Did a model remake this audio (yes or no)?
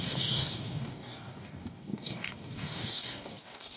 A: yes